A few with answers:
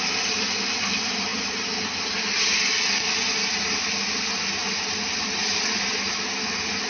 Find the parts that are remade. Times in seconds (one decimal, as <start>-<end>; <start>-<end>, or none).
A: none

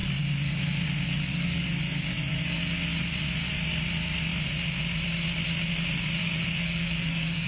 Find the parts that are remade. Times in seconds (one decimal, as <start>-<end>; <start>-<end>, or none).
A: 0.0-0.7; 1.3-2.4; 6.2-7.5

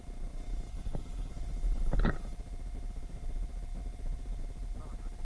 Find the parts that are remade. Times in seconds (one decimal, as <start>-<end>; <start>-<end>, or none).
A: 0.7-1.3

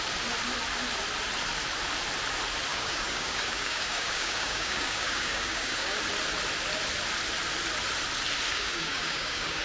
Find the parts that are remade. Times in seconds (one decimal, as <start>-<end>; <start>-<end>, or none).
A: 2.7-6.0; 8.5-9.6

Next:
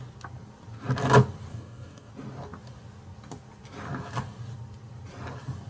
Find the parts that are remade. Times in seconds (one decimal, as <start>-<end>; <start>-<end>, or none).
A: 1.5-2.1

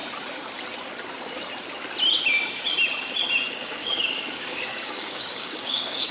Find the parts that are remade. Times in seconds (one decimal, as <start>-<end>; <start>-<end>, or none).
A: 3.5-6.1